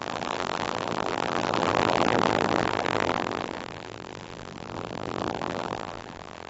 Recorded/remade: remade